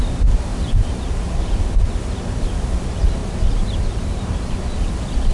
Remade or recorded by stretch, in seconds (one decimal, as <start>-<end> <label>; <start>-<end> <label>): 0.0-0.5 recorded; 0.5-1.1 remade; 1.1-3.2 recorded; 3.2-4.5 remade; 4.5-5.3 recorded